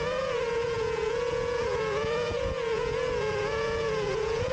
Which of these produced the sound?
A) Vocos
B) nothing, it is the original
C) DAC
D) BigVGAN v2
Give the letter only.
A